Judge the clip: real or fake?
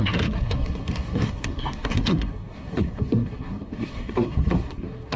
fake